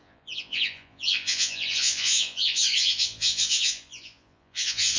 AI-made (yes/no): yes